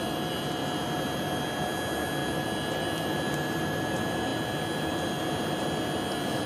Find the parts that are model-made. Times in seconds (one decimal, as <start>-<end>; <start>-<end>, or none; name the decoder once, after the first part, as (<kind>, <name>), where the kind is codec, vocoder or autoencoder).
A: none